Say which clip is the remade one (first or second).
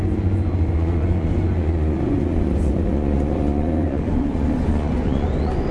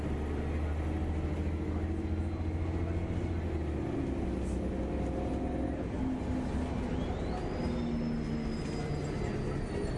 first